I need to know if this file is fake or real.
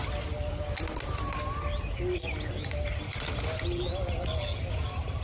real